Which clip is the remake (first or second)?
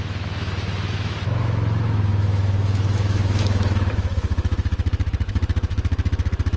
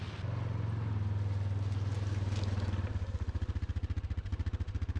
first